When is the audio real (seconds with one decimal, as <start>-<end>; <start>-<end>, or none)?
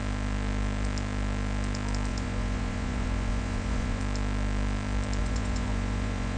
0.0-2.1; 4.0-5.2